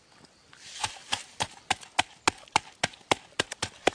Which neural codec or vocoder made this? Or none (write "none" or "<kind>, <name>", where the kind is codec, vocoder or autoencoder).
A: none